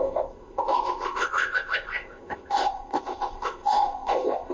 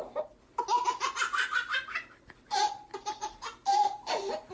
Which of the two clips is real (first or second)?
second